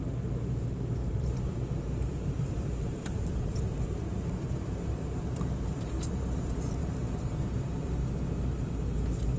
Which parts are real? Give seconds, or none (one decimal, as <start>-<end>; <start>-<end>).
0.0-1.0; 6.1-6.8; 7.8-9.4